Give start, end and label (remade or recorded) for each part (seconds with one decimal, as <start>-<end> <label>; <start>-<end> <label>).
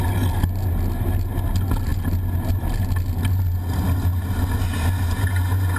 0.0-5.8 recorded